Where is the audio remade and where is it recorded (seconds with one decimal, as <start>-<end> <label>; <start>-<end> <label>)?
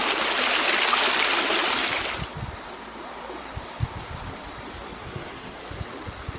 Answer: 0.0-5.0 recorded; 5.0-5.6 remade; 5.6-6.4 recorded